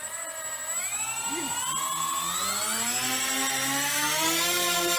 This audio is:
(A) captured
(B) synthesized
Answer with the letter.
A